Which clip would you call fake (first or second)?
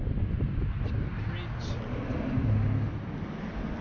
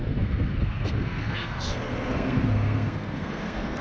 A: second